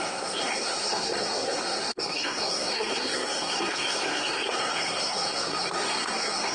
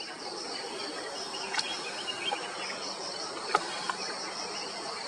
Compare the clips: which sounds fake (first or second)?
first